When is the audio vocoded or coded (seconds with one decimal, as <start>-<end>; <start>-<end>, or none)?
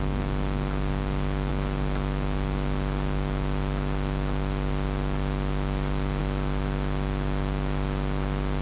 none